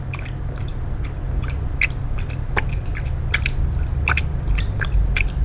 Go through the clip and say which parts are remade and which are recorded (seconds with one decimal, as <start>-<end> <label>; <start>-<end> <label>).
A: 0.0-5.4 recorded